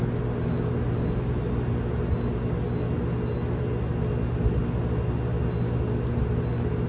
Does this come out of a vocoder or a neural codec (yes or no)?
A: no